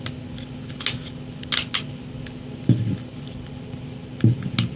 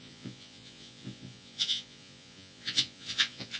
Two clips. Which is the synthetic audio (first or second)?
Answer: second